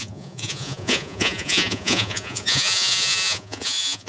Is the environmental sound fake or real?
fake